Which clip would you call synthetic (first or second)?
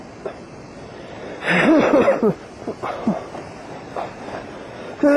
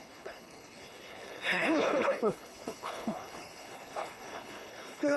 second